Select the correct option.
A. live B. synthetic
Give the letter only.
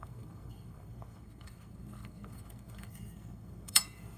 B